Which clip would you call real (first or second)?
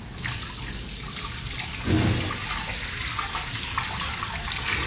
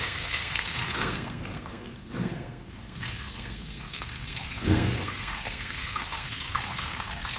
first